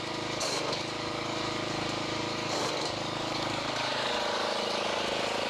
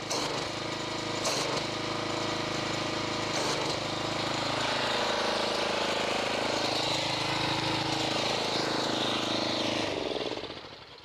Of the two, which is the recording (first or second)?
second